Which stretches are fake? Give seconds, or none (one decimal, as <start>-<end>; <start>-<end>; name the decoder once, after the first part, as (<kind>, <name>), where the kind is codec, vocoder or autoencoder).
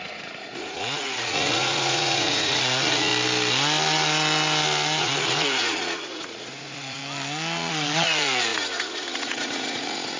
0.0-3.1 (vocoder, Vocos); 5.0-7.0; 7.7-10.2